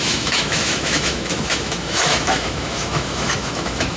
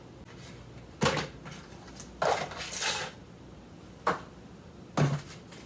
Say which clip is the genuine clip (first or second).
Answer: second